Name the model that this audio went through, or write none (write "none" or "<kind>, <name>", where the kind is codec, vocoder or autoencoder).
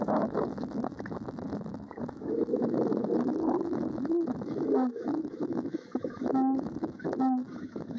autoencoder, DAC-VAE